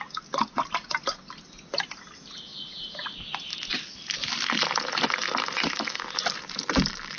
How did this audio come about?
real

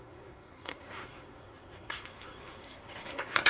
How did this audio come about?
fake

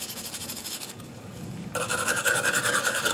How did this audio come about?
fake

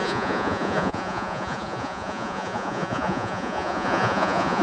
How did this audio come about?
fake